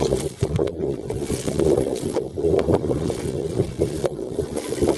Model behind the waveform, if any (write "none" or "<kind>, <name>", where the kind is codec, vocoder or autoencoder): vocoder, Vocos